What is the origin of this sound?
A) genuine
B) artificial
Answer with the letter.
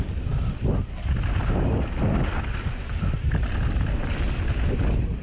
A